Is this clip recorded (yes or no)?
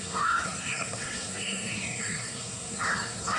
no